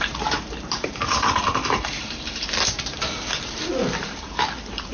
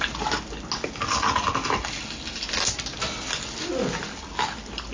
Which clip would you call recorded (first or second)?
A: second